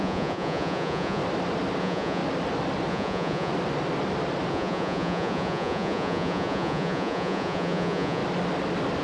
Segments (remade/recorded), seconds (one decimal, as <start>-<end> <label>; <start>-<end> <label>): 0.0-1.2 remade; 1.2-1.8 recorded; 1.8-2.2 remade; 2.2-2.9 recorded; 2.9-3.5 remade; 3.5-4.5 recorded; 4.5-8.2 remade; 8.2-9.0 recorded